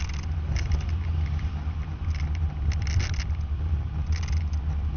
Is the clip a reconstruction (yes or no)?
no